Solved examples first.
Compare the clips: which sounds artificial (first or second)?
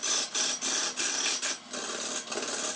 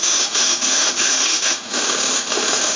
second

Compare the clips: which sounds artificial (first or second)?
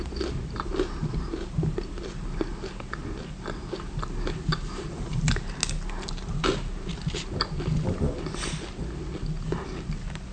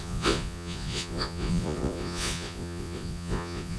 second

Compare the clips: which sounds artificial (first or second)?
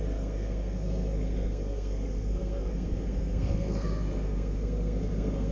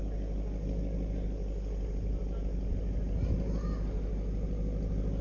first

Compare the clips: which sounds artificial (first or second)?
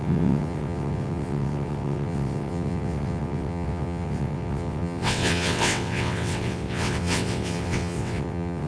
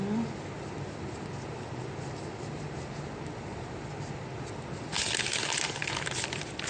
first